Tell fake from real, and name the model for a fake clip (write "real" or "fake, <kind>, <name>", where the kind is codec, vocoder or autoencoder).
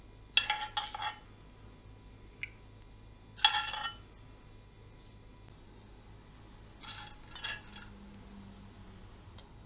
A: real